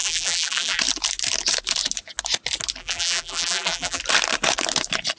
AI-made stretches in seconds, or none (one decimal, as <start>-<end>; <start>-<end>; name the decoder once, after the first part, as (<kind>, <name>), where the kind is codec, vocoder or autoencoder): 0.0-0.8 (vocoder, BigVGAN v2); 2.8-4.0